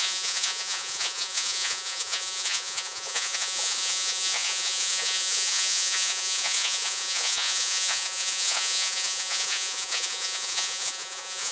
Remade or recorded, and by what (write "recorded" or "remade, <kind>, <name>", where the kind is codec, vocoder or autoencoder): remade, vocoder, Vocos